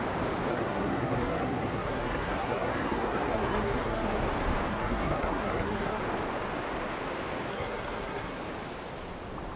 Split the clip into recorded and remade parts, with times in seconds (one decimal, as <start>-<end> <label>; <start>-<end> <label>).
0.0-0.5 recorded; 0.5-4.2 remade; 4.2-4.7 recorded; 4.7-6.0 remade; 6.0-7.5 recorded; 7.5-8.4 remade; 8.4-9.6 recorded